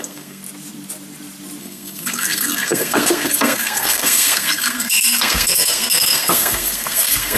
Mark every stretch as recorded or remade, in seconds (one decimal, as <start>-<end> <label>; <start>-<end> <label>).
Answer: 0.0-0.4 remade; 0.4-1.6 recorded; 1.6-7.4 remade